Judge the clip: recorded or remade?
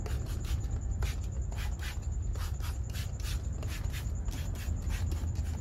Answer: recorded